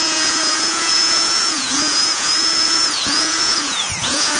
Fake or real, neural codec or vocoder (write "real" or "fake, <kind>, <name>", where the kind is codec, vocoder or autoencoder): fake, vocoder, Vocos